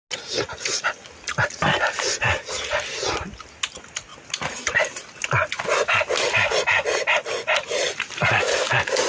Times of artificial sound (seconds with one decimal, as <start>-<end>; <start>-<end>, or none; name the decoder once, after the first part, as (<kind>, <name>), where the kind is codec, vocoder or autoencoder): none